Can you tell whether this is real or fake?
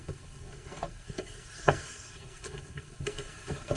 fake